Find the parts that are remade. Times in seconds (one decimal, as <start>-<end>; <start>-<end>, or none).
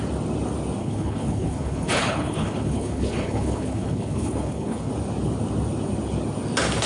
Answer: 0.8-4.9